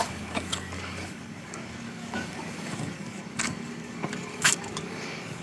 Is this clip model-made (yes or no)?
yes